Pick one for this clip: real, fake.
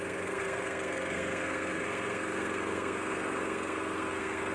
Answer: fake